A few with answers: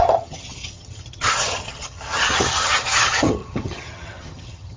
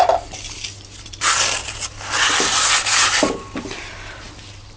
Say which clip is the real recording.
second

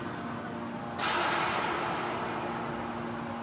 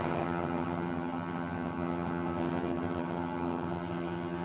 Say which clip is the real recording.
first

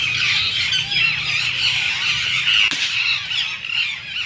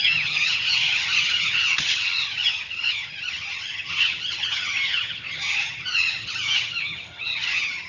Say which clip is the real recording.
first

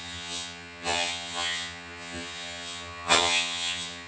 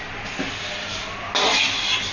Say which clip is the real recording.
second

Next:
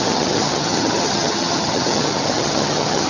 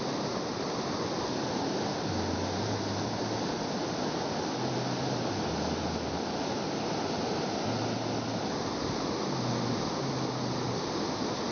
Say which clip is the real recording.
second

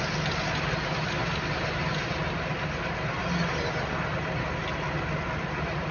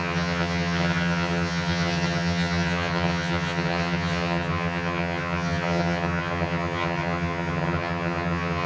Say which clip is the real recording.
first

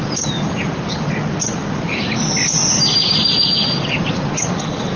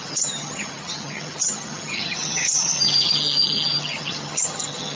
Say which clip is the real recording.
first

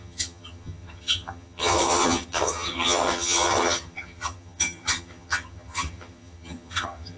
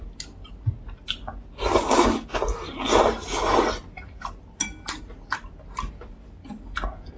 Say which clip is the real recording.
second